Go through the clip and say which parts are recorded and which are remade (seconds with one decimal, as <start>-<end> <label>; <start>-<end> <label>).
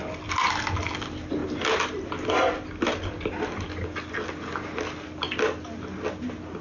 0.0-6.6 recorded